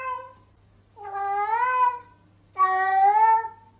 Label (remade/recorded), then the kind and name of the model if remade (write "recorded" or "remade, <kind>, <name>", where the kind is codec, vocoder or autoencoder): recorded